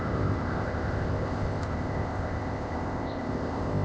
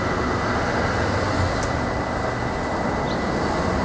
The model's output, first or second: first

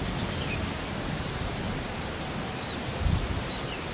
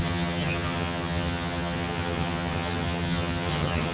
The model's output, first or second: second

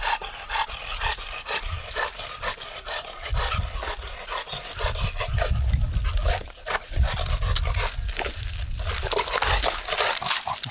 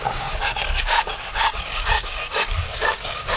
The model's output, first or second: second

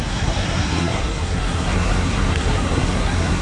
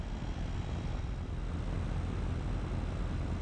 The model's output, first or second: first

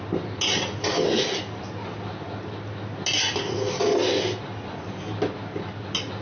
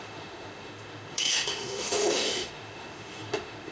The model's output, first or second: second